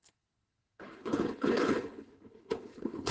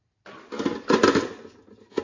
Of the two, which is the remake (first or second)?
first